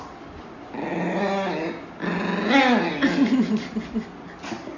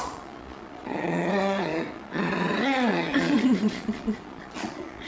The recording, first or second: first